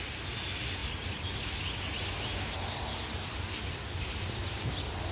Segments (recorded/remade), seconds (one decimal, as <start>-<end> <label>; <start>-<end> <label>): 0.0-5.1 recorded